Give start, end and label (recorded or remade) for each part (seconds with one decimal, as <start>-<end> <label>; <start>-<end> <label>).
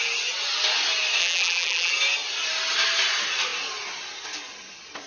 0.0-1.2 recorded; 1.2-1.9 remade; 1.9-5.1 recorded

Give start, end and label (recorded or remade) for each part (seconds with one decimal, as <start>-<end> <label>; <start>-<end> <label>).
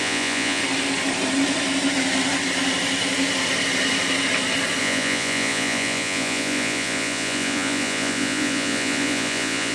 0.0-0.6 remade; 0.6-4.8 recorded; 4.8-9.7 remade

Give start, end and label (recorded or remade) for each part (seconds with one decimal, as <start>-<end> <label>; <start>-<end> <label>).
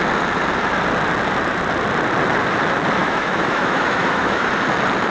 0.0-3.0 recorded; 3.0-4.5 remade; 4.5-5.1 recorded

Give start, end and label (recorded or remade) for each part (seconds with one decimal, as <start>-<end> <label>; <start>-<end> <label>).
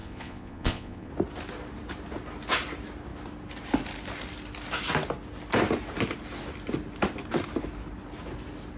0.0-1.1 remade; 1.1-8.8 recorded